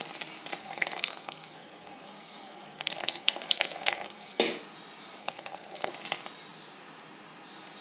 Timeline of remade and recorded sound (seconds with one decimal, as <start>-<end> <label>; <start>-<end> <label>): 0.0-0.6 recorded; 0.6-4.4 remade; 4.4-5.2 recorded; 5.2-5.9 remade; 5.9-7.8 recorded